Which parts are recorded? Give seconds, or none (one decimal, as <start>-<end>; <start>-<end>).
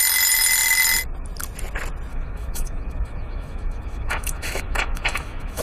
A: 0.0-2.1